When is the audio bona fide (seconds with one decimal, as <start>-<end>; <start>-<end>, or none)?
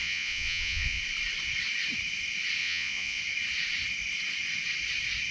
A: 1.0-2.6; 3.2-5.3